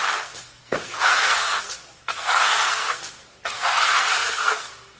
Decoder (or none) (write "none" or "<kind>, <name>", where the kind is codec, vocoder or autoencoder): codec, SNAC